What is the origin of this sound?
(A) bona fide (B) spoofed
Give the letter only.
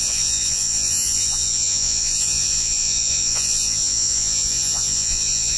B